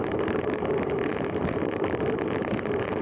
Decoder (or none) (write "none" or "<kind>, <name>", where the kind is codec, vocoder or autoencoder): vocoder, BigVGAN v2